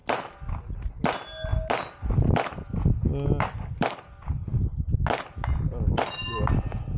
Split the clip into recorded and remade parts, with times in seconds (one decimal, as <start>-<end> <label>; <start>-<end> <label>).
0.0-7.0 recorded